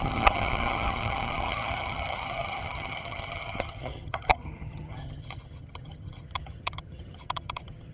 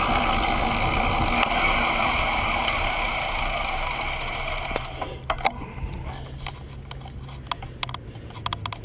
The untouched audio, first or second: second